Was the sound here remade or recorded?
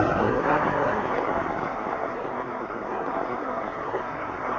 remade